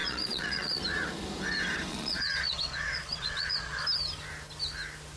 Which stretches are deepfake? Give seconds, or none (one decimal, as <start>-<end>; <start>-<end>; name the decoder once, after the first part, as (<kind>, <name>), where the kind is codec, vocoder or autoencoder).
0.0-0.8 (vocoder, Vocos); 1.9-3.8